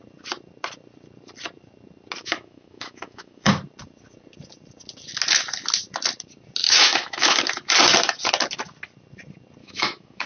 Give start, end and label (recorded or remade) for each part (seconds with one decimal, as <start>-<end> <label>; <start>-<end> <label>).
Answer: 0.0-2.2 recorded; 2.2-3.5 remade; 3.5-6.6 recorded; 6.6-7.4 remade; 7.4-9.6 recorded; 9.6-10.3 remade